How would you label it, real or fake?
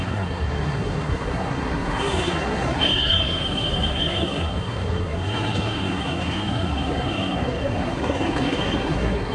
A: fake